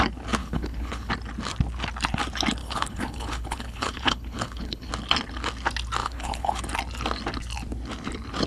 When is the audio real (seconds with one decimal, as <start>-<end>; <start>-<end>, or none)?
0.0-0.4; 1.1-2.6; 4.9-6.0; 6.6-8.5